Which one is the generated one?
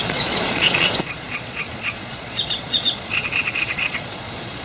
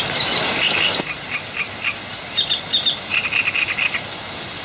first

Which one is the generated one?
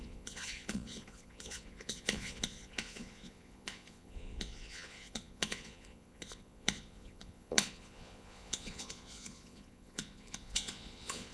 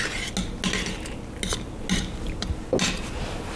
first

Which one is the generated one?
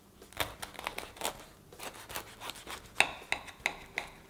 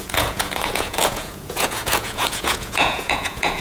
second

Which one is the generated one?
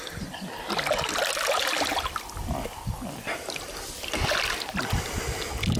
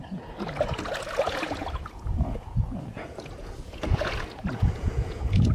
second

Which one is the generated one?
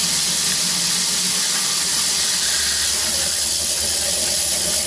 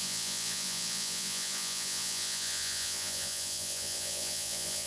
second